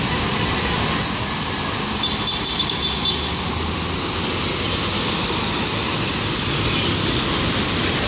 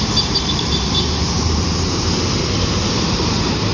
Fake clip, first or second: second